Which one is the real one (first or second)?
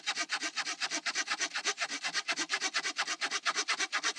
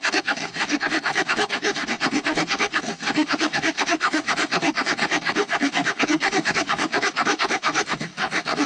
first